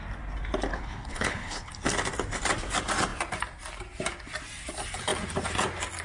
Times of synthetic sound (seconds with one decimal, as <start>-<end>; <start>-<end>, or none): 0.7-1.7